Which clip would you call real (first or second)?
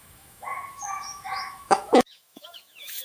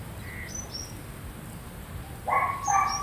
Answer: second